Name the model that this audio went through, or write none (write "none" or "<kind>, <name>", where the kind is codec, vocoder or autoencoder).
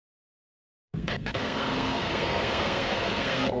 codec, SNAC